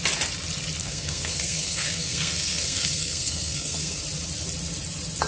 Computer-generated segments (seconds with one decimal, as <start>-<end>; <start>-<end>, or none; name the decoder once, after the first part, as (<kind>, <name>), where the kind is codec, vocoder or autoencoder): 0.8-4.0 (codec, SNAC)